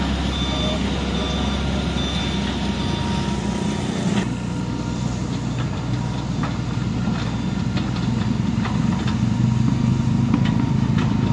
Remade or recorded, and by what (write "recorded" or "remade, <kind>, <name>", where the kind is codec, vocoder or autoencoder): recorded